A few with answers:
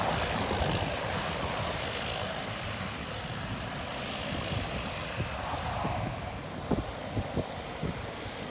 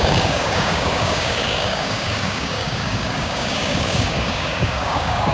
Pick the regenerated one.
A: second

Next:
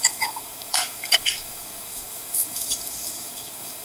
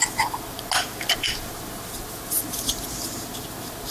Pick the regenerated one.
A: first